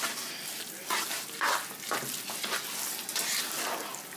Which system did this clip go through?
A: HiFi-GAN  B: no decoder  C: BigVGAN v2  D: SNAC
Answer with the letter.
B